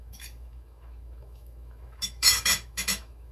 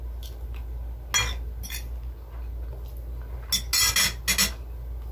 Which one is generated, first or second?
first